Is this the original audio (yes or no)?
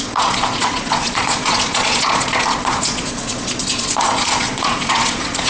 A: no